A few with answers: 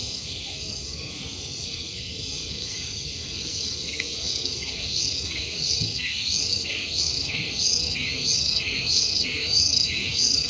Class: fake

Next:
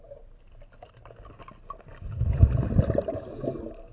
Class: real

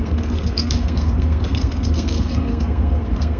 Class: fake